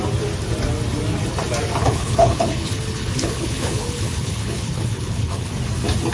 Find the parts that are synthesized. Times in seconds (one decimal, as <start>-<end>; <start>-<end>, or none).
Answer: 1.8-5.5